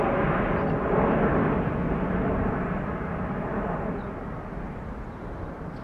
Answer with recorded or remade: recorded